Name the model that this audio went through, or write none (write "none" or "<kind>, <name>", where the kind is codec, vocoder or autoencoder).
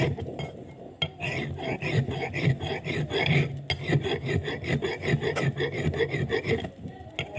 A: none